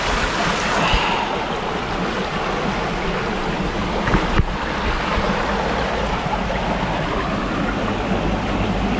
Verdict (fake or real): real